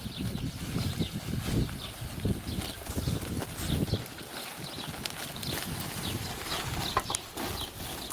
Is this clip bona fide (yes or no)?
yes